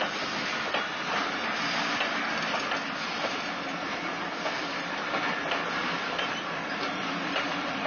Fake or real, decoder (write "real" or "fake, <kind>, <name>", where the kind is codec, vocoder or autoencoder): real